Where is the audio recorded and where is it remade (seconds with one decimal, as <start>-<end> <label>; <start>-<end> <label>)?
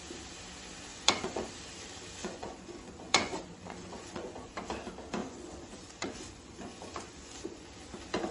0.0-0.9 recorded; 0.9-1.5 remade; 1.5-2.2 recorded; 2.2-4.5 remade; 4.5-5.2 recorded; 5.2-7.7 remade; 7.7-8.3 recorded